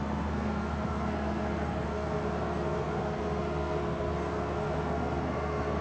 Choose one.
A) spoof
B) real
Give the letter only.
A